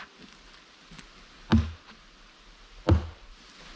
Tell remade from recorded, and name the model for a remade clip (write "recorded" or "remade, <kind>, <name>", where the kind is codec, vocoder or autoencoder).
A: recorded